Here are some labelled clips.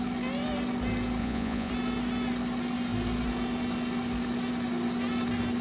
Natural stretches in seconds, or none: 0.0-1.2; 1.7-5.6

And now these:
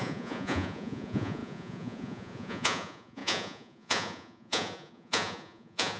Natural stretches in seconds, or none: none

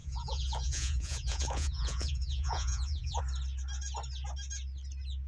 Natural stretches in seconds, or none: 3.2-5.3

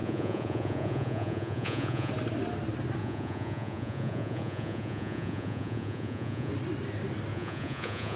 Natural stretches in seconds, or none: 2.1-3.0; 6.5-7.3

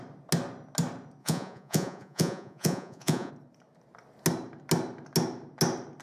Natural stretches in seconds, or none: 0.0-1.2; 3.3-6.0

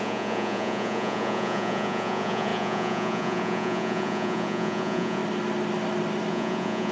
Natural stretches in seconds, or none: 5.2-6.3

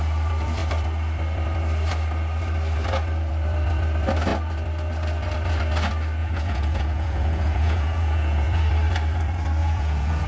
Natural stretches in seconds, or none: 0.0-6.2; 8.6-9.6

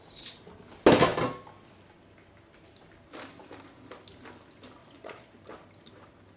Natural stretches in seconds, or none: 0.0-4.8; 5.3-6.4